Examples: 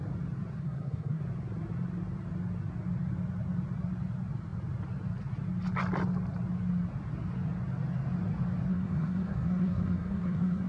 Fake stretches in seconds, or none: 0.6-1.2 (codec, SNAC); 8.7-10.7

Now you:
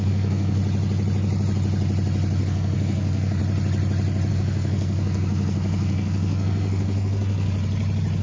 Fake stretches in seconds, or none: 0.0-0.6 (codec, SNAC); 2.4-3.4; 4.3-7.5